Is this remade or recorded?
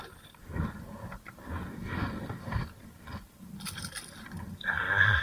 recorded